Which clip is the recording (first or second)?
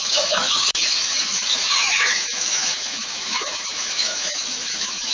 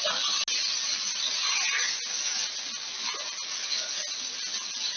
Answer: second